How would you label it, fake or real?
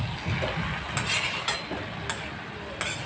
real